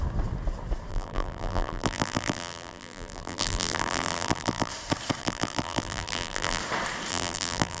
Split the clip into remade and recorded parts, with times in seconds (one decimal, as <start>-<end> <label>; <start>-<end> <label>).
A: 0.0-0.9 recorded; 0.9-4.7 remade; 4.7-5.2 recorded; 5.2-6.6 remade; 6.6-7.1 recorded; 7.1-7.8 remade